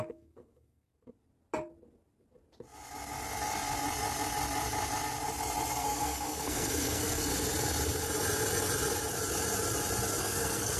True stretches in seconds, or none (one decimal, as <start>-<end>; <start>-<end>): 0.9-5.7; 7.3-10.2